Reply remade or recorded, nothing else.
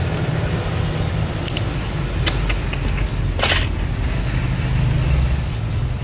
recorded